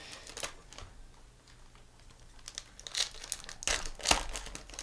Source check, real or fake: real